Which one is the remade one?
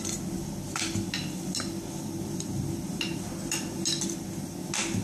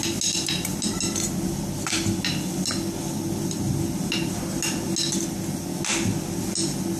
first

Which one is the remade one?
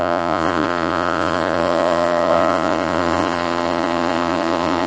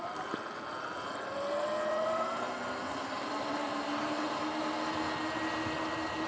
first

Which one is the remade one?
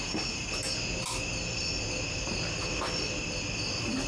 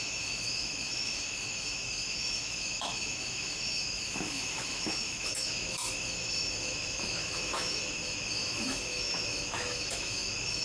second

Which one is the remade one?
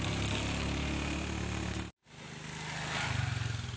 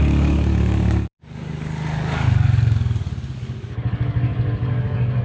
second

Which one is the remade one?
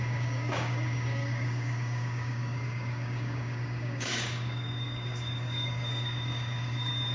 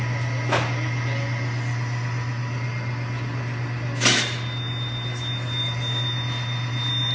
first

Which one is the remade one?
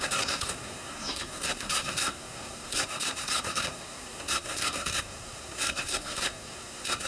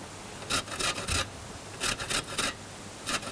first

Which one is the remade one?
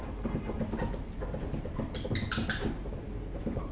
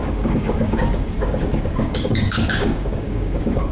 second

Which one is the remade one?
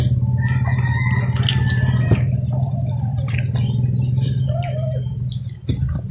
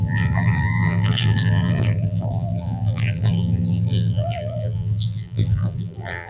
second